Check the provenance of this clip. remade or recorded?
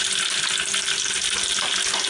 recorded